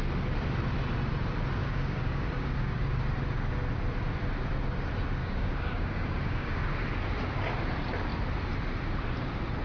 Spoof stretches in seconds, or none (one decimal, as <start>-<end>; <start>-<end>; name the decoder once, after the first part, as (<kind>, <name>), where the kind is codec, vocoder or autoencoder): 1.6-3.0 (codec, DAC); 5.2-6.6